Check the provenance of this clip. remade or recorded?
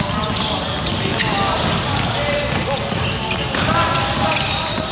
recorded